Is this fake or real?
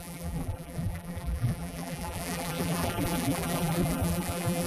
fake